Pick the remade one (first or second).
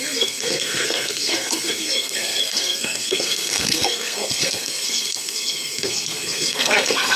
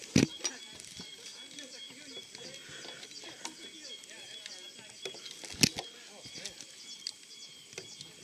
first